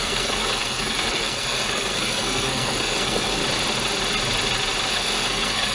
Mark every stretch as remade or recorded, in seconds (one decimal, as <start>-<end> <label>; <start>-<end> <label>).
0.0-3.4 remade; 3.4-4.9 recorded; 4.9-5.7 remade